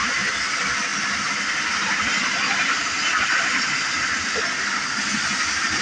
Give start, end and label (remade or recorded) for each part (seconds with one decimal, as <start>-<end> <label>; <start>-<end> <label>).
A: 0.0-5.8 recorded